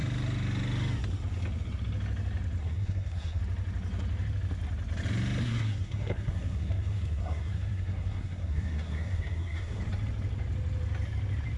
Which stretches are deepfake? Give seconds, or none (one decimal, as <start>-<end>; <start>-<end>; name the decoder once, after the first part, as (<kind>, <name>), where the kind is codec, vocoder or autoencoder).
2.6-3.4 (codec, SNAC); 5.4-9.8